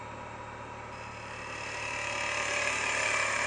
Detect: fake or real real